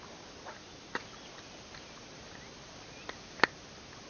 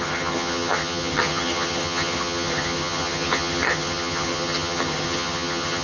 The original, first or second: first